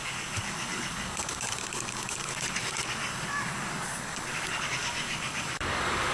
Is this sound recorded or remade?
remade